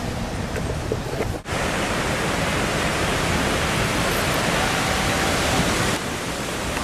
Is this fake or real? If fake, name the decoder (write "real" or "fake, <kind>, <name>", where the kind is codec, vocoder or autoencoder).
fake, vocoder, BigVGAN v2